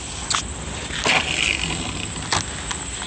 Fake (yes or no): no